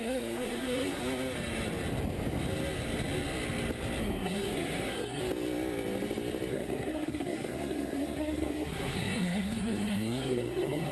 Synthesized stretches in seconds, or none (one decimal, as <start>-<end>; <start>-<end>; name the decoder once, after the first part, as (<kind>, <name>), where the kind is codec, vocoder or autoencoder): 0.0-1.0 (codec, SNAC); 4.0-5.2; 6.5-10.9